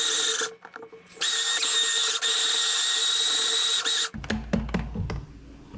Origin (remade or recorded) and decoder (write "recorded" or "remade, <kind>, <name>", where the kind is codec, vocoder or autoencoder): recorded